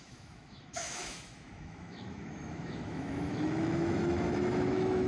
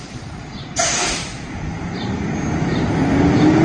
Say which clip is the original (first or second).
second